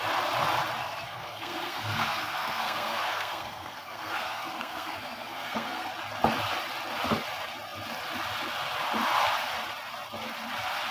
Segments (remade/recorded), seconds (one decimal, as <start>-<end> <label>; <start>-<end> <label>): 0.0-0.8 recorded; 0.8-5.9 remade; 5.9-10.9 recorded